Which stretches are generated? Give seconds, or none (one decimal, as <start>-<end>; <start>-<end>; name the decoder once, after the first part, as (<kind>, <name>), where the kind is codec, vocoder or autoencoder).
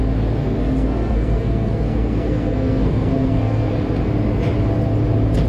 0.4-3.7 (codec, SNAC)